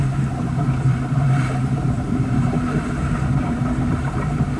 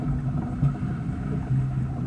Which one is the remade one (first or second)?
first